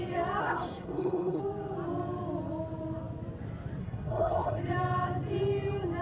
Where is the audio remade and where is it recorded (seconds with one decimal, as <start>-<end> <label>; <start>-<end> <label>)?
0.0-0.4 recorded; 0.4-1.4 remade; 1.4-3.8 recorded; 3.8-4.6 remade; 4.6-6.0 recorded

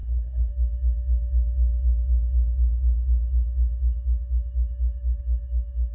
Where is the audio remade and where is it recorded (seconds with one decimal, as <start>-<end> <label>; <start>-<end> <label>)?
0.0-0.5 remade; 0.5-5.9 recorded

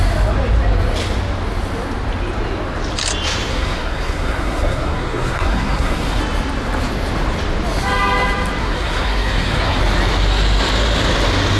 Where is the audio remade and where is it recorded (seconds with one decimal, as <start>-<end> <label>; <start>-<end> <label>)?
0.0-3.5 recorded; 3.5-6.2 remade; 6.2-8.6 recorded; 8.6-9.8 remade; 9.8-11.6 recorded

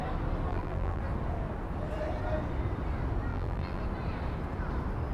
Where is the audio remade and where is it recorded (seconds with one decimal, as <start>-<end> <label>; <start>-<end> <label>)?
0.0-0.5 recorded; 0.5-1.0 remade; 1.0-3.3 recorded; 3.3-3.8 remade; 3.8-5.1 recorded

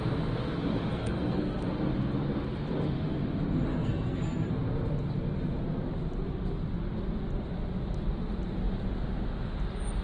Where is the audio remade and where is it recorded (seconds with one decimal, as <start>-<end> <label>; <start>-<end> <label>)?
0.0-0.9 recorded; 0.9-1.7 remade; 1.7-3.7 recorded; 3.7-4.5 remade; 4.5-10.0 recorded

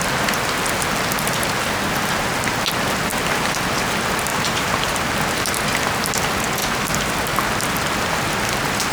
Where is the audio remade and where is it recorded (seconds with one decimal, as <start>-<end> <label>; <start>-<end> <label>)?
0.0-3.1 recorded; 3.1-3.6 remade; 3.6-4.3 recorded; 4.3-5.1 remade; 5.1-8.9 recorded

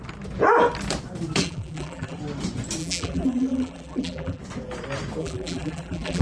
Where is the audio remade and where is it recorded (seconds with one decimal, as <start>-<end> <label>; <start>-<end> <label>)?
0.0-1.4 recorded; 1.4-2.2 remade; 2.2-2.8 recorded; 2.8-4.4 remade; 4.4-5.2 recorded; 5.2-6.2 remade

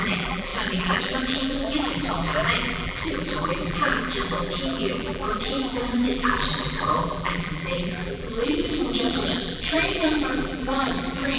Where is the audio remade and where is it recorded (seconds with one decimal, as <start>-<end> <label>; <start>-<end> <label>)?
0.0-11.4 remade